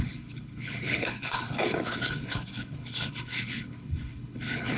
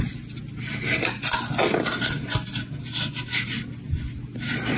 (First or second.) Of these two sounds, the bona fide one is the second